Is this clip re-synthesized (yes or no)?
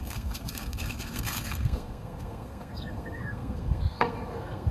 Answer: yes